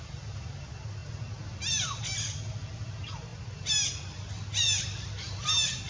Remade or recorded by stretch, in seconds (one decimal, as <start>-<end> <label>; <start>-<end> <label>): 0.0-5.9 recorded